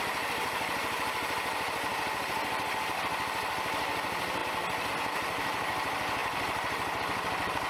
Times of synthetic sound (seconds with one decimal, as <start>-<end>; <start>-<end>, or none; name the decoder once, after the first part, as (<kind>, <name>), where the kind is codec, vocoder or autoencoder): none